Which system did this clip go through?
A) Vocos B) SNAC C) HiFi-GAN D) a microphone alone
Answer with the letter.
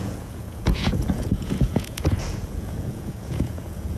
A